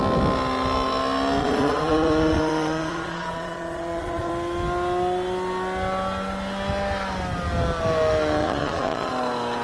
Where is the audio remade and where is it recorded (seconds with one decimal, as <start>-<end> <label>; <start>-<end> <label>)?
0.0-1.4 recorded; 1.4-4.3 remade; 4.3-8.4 recorded; 8.4-9.1 remade; 9.1-9.6 recorded